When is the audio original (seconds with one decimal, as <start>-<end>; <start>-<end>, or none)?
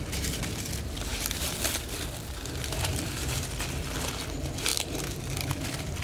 0.0-4.7; 5.2-6.0